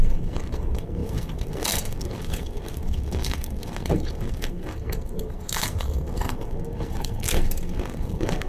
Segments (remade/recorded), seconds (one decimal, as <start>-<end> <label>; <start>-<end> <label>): 0.0-8.5 remade